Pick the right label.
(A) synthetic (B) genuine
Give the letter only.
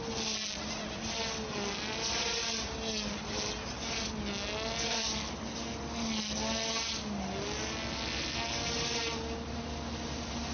B